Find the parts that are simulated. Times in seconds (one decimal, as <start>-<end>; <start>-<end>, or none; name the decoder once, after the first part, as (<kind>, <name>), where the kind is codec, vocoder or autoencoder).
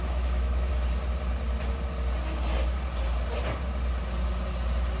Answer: 0.0-0.7 (autoencoder, DAC-VAE)